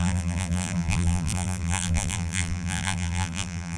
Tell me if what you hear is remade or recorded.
remade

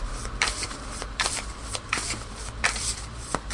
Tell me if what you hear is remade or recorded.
remade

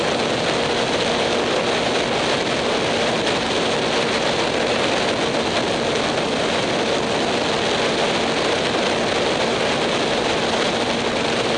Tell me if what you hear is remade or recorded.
recorded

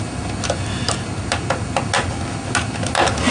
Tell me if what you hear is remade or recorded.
recorded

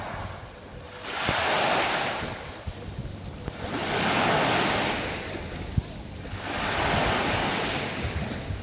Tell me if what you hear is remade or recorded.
recorded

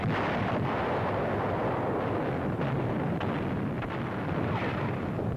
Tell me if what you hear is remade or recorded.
remade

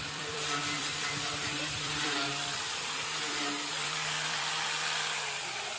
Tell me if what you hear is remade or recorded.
remade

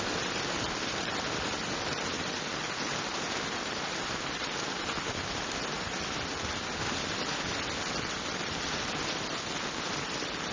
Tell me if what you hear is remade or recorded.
remade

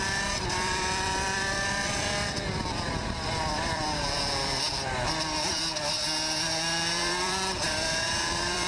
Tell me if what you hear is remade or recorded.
remade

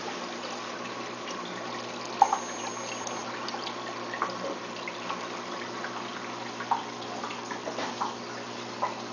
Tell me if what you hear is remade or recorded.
recorded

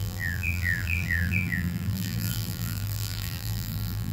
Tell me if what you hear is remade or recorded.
remade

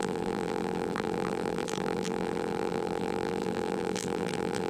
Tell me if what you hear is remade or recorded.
remade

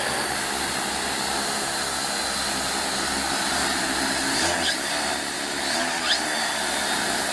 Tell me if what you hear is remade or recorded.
recorded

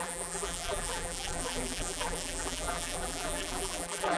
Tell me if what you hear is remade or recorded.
remade